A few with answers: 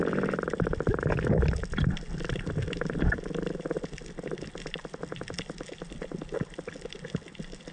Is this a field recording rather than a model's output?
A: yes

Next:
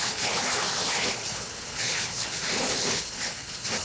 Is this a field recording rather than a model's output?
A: no